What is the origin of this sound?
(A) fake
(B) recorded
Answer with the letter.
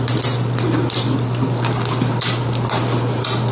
B